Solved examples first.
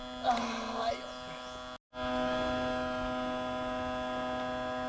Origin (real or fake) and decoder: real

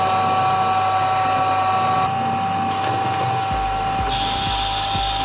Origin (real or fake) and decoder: real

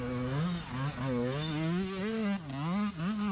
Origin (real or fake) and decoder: real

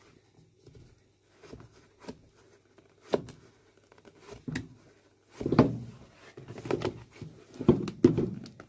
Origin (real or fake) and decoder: real